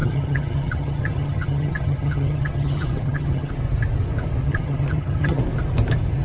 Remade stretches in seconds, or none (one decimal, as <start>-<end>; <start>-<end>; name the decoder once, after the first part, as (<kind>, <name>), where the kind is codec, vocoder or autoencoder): 0.0-3.5 (vocoder, HiFi-GAN); 4.4-5.4